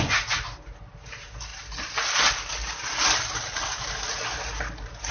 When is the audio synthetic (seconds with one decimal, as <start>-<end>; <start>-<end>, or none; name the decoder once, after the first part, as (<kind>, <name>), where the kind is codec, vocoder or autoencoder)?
none